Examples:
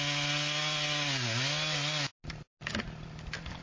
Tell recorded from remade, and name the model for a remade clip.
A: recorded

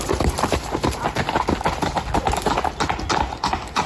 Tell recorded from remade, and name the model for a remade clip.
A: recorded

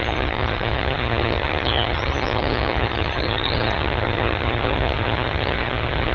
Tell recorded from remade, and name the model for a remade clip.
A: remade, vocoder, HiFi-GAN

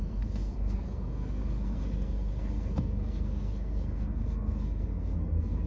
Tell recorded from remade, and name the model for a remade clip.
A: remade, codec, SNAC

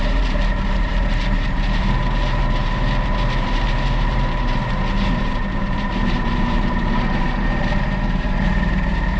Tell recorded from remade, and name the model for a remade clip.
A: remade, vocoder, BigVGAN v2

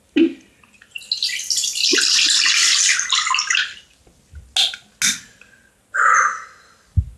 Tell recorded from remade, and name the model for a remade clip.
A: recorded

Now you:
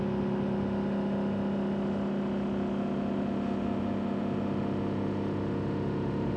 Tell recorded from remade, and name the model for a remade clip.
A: remade, autoencoder, DAC-VAE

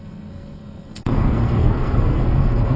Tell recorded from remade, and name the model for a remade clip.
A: remade, codec, SNAC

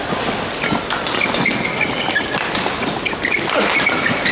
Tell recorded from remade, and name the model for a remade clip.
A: recorded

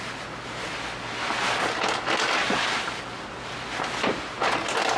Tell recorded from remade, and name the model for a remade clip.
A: recorded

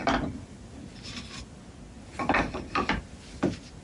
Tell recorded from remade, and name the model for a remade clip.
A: recorded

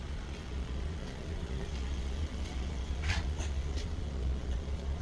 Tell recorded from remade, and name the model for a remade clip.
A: remade, vocoder, Vocos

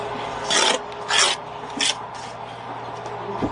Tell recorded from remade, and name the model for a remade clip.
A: recorded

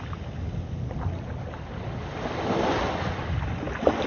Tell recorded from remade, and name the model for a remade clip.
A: recorded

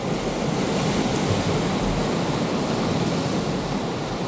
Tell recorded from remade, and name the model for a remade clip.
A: recorded